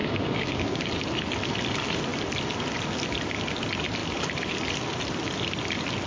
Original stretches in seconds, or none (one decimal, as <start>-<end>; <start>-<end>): 0.9-6.1